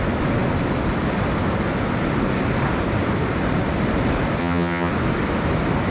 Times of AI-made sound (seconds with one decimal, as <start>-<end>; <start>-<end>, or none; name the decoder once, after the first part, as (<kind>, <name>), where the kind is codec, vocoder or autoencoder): 4.4-4.9 (vocoder, HiFi-GAN)